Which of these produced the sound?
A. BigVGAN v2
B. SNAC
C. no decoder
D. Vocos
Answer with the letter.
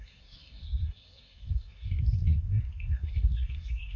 B